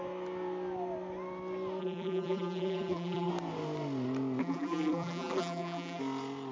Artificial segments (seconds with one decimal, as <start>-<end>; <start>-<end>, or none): 1.8-3.3; 4.4-6.0